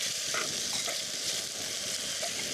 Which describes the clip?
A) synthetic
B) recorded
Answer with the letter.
B